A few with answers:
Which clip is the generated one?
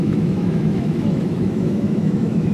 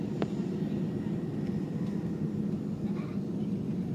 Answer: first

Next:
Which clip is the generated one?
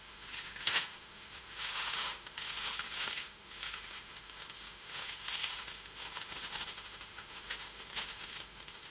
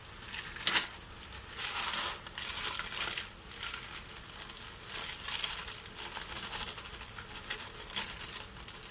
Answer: first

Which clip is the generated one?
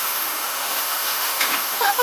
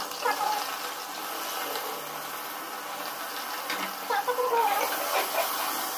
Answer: first